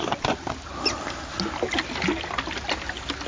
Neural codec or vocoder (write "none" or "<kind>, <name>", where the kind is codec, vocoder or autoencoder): none